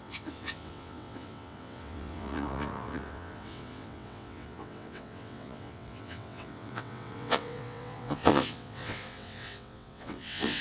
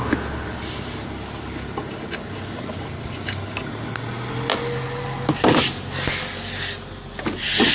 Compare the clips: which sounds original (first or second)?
second